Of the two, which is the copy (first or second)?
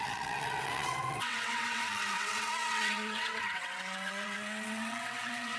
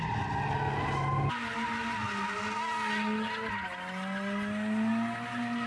first